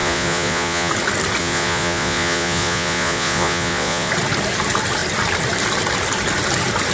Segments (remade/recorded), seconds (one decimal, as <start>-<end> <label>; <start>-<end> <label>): 0.0-0.9 remade; 0.9-1.4 recorded; 1.4-4.1 remade; 4.1-6.9 recorded